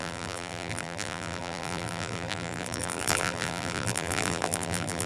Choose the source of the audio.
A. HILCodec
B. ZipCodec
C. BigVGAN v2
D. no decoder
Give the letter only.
C